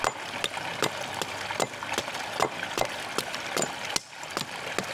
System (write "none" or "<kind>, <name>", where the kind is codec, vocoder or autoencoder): none